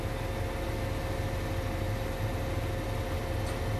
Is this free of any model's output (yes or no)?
yes